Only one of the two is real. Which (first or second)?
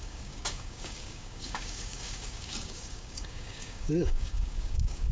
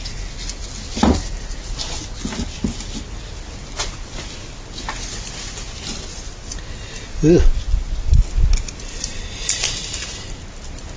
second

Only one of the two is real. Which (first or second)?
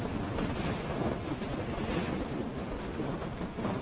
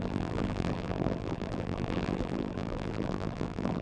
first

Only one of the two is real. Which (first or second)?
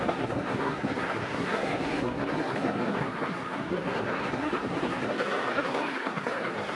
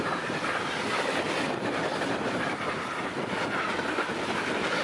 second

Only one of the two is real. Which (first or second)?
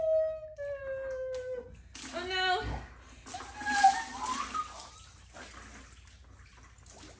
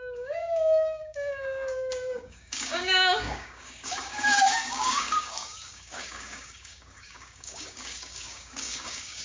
first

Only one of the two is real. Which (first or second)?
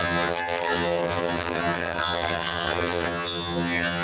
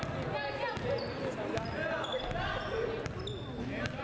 second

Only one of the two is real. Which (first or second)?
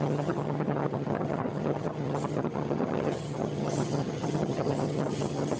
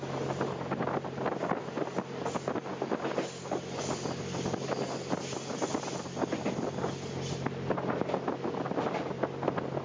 second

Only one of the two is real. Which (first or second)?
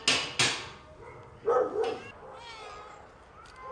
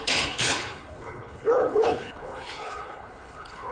first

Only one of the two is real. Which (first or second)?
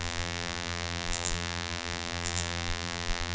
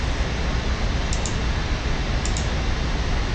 second